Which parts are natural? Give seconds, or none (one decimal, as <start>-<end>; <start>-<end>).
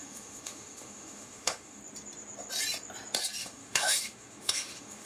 1.8-3.4